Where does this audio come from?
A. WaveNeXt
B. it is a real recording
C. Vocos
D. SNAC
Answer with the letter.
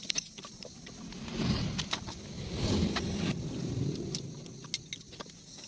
B